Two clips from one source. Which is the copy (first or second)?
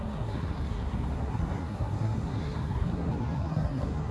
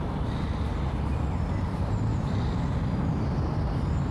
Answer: first